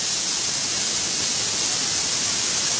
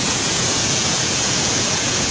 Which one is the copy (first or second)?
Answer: second